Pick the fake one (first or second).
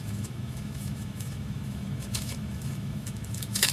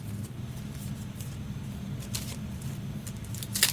first